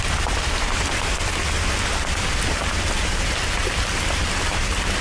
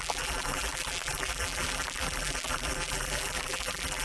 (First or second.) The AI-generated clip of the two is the second